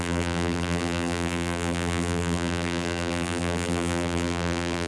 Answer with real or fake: fake